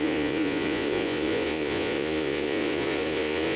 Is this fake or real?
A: fake